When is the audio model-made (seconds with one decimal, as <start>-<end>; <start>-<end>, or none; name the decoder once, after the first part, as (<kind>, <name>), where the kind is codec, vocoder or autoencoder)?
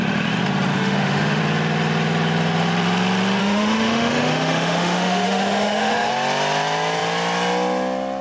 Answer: 0.7-1.4 (autoencoder, DAC-VAE); 3.4-6.1